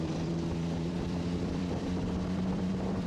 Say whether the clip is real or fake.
fake